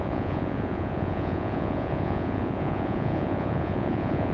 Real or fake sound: fake